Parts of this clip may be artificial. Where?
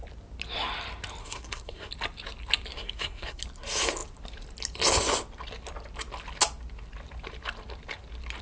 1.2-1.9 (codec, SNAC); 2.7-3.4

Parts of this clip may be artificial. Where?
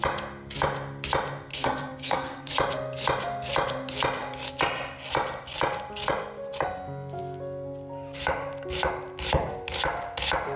1.5-2.5 (codec, SNAC)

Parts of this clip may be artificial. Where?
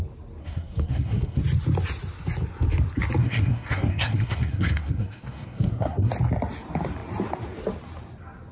0.4-1.4 (codec, SNAC); 3.2-6.1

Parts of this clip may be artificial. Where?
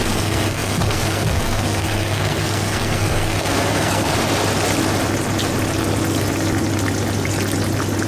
0.0-4.1 (codec, SNAC)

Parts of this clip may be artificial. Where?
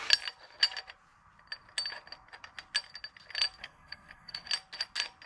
3.6-4.5 (codec, SNAC)